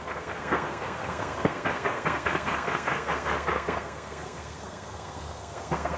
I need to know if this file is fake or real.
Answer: fake